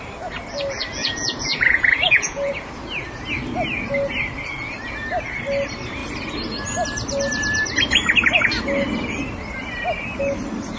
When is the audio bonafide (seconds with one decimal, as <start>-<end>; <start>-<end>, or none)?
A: 0.0-1.0; 2.5-10.8